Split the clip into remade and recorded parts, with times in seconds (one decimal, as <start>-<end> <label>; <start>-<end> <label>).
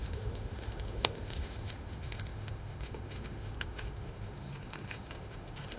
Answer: 0.0-5.8 remade